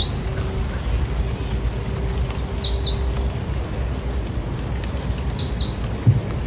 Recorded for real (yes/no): yes